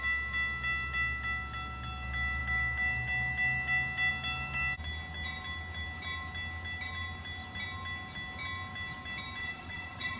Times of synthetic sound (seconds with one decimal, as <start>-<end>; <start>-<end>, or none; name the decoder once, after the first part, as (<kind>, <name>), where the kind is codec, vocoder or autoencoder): 9.4-10.2 (vocoder, Vocos)

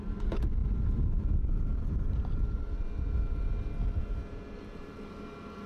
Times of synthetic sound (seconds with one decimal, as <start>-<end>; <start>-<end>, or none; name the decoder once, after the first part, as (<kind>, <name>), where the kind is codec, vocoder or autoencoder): none